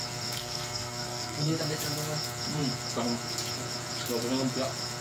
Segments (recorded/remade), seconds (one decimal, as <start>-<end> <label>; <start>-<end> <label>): 0.0-0.4 recorded; 0.4-1.6 remade; 1.6-5.0 recorded

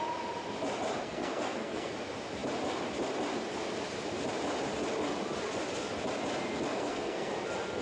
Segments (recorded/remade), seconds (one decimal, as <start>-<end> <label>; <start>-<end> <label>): 0.0-1.0 recorded; 1.0-1.9 remade; 1.9-6.7 recorded; 6.7-7.3 remade; 7.3-7.8 recorded

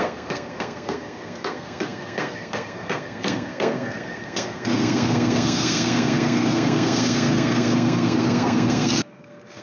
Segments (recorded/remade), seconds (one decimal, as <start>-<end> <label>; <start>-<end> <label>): 0.0-9.6 remade

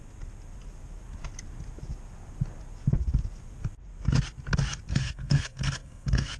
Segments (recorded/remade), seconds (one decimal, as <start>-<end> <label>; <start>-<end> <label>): 0.0-4.9 recorded; 4.9-6.4 remade

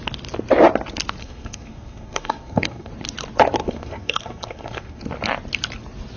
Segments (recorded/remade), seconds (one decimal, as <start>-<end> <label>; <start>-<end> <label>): 0.0-1.2 recorded; 1.2-2.9 remade; 2.9-3.6 recorded; 3.6-5.0 remade; 5.0-6.2 recorded

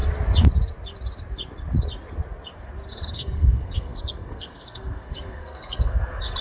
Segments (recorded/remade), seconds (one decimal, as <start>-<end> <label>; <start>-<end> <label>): 0.0-2.9 recorded; 2.9-6.4 remade

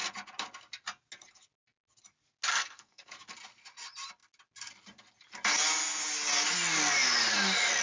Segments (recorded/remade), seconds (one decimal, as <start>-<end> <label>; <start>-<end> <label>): 0.0-2.5 recorded; 2.5-3.1 remade; 3.1-7.8 recorded